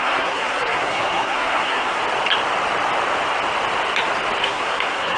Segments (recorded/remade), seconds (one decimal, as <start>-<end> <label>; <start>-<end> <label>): 0.0-2.0 remade; 2.0-4.4 recorded; 4.4-5.2 remade

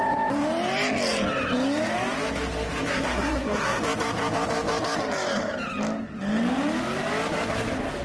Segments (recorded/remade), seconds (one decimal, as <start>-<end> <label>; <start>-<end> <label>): 0.0-2.9 recorded; 2.9-3.8 remade; 3.8-8.0 recorded

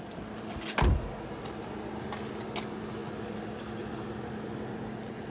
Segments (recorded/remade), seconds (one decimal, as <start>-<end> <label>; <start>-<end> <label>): 0.0-5.3 recorded

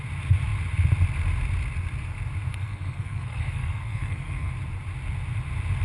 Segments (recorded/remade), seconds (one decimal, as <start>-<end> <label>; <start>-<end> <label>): 0.0-2.5 recorded; 2.5-4.5 remade; 4.5-5.8 recorded

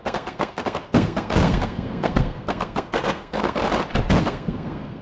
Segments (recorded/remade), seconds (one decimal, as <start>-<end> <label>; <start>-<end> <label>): 0.0-3.6 remade; 3.6-4.2 recorded; 4.2-5.0 remade

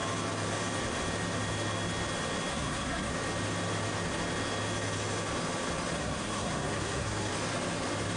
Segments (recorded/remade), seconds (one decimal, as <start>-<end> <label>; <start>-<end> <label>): 0.0-2.5 recorded; 2.5-3.1 remade; 3.1-5.9 recorded; 5.9-7.3 remade; 7.3-8.2 recorded